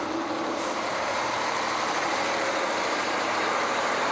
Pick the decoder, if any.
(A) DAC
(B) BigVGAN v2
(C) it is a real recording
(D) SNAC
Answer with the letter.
B